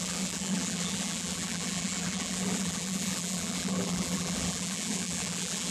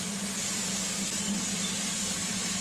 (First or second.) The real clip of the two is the second